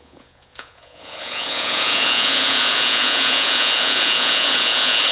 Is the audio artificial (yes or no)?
yes